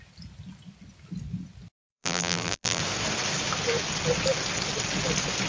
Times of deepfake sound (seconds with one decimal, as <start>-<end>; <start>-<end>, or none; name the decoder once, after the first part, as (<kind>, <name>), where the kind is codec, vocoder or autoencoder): 1.8-2.8 (vocoder, BigVGAN v2)